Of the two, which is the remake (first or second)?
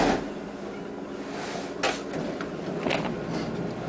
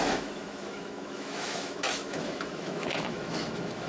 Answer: second